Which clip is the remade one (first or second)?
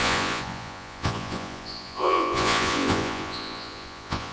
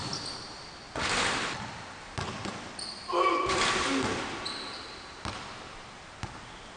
first